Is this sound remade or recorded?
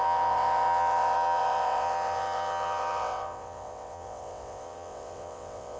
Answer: remade